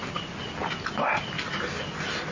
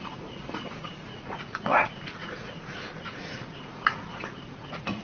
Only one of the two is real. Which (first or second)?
first